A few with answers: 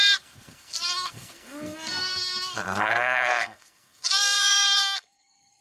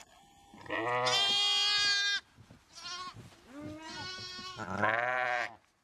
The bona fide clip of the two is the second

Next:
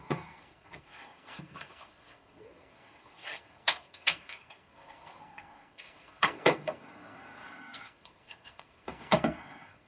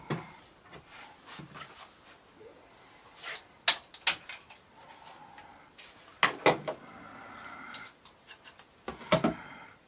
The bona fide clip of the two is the second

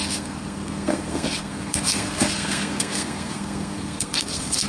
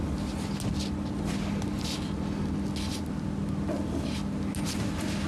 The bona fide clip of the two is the second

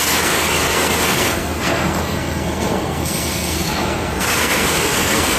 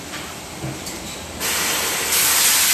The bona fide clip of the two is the second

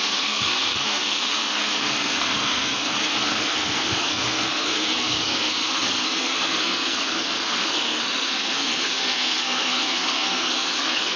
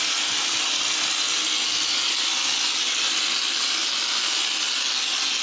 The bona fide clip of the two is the second